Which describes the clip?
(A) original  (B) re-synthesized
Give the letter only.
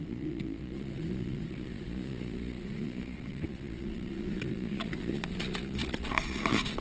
B